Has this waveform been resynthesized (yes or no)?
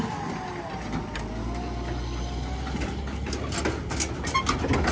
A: no